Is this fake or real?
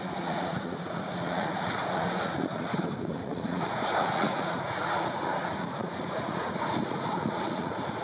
fake